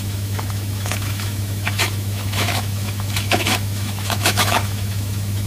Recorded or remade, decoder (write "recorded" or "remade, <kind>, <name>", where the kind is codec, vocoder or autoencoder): remade, autoencoder, DAC-VAE